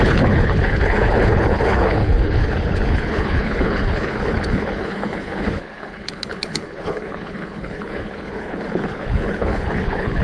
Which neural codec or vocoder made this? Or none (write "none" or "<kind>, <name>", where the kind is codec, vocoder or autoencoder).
codec, HILCodec